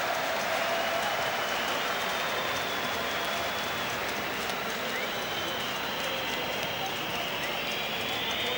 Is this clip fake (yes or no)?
no